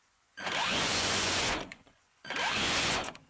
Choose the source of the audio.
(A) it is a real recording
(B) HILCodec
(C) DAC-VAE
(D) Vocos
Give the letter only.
D